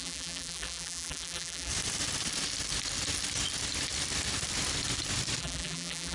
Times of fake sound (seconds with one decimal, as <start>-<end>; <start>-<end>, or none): 0.0-1.7; 5.4-6.1

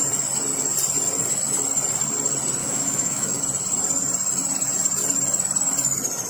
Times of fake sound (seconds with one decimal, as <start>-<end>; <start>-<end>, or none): 2.6-3.4

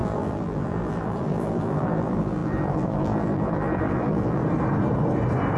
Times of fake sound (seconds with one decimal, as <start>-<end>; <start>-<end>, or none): 0.0-4.4

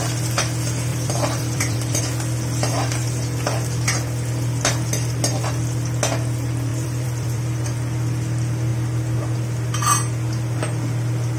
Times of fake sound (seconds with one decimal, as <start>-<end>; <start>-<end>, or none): 0.9-2.0; 6.7-7.4

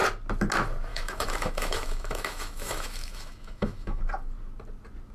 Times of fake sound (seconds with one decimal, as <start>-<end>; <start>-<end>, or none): 0.9-4.0

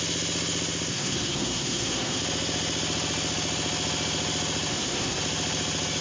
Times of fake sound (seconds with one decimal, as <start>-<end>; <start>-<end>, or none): 0.9-2.2; 4.7-5.2